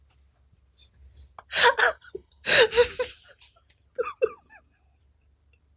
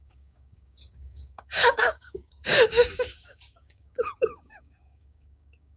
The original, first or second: first